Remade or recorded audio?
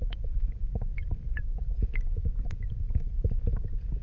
remade